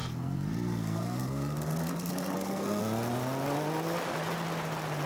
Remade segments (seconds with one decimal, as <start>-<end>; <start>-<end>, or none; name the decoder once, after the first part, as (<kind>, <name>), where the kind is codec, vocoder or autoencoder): 0.0-2.8 (codec, SNAC)